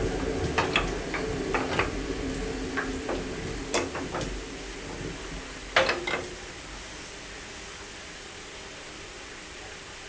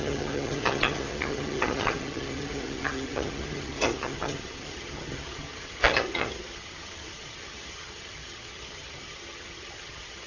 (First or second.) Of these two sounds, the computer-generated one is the second